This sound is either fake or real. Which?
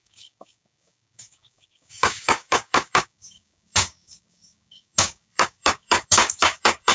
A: fake